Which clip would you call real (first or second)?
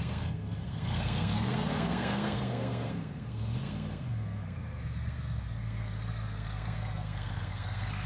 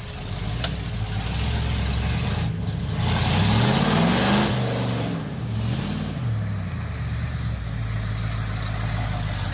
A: second